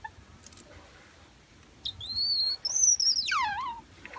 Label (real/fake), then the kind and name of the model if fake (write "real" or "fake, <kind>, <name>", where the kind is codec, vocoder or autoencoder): real